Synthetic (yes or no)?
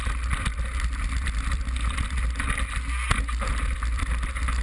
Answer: no